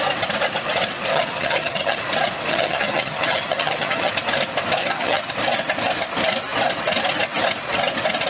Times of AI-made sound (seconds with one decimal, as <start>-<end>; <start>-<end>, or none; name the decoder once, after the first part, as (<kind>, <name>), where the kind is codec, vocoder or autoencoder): 1.1-2.0 (vocoder, HiFi-GAN); 2.5-4.1; 4.8-5.3